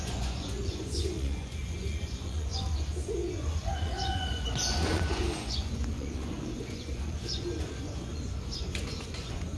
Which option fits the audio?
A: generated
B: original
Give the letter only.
A